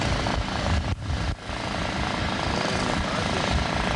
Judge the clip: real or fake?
real